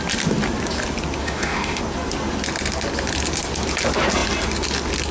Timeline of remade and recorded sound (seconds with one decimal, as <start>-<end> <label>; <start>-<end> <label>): 0.0-1.2 recorded; 1.2-1.8 remade; 1.8-5.1 recorded